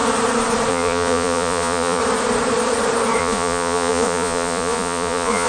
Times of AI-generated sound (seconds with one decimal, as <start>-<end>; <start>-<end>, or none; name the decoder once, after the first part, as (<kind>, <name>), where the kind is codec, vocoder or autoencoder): 0.7-2.0 (vocoder, Vocos); 3.2-5.5

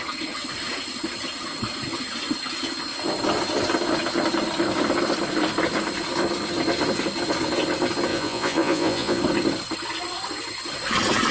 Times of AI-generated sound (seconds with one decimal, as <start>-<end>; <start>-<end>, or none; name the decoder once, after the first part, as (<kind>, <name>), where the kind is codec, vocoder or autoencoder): 8.1-9.2 (vocoder, Vocos)

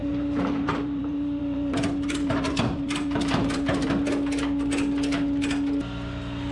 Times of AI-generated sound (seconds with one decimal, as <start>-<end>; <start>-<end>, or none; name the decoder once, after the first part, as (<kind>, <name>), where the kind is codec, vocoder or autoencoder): 0.0-3.9 (vocoder, BigVGAN v2)

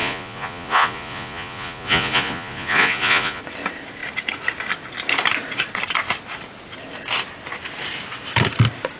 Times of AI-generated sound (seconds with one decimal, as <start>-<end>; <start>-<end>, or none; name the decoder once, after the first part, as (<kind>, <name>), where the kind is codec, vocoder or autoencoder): 0.0-3.4 (vocoder, Vocos)

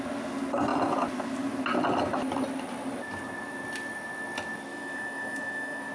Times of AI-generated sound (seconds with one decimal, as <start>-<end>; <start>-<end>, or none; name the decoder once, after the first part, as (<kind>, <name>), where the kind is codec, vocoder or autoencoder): 4.7-5.9 (autoencoder, DAC-VAE)

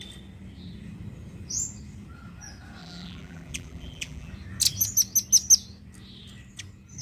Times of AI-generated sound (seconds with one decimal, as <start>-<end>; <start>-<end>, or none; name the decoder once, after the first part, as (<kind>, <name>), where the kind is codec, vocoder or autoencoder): 2.8-4.3 (vocoder, BigVGAN v2)

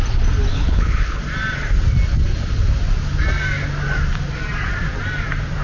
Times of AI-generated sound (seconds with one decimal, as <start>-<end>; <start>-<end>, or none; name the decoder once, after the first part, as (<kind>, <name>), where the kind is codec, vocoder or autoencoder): 0.5-1.2 (codec, HILCodec)